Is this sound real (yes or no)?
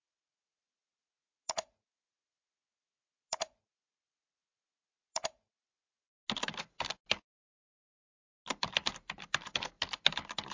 yes